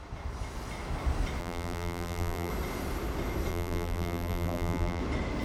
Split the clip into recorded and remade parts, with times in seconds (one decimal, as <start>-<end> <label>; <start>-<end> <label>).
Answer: 0.0-1.4 recorded; 1.4-2.5 remade; 2.5-3.5 recorded; 3.5-5.0 remade; 5.0-5.4 recorded